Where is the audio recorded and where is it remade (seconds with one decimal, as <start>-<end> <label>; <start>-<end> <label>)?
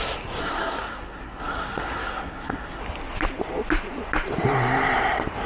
0.0-0.4 recorded; 0.4-2.8 remade; 2.8-5.5 recorded